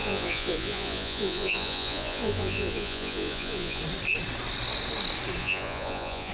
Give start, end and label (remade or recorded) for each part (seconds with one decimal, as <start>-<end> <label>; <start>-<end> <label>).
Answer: 0.0-3.8 remade; 3.8-5.4 recorded; 5.4-6.3 remade